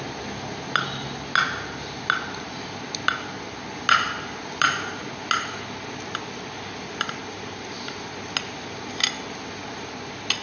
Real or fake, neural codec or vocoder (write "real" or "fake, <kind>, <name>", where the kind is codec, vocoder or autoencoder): real